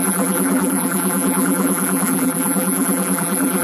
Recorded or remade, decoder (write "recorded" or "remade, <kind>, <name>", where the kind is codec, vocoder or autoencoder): remade, vocoder, BigVGAN v2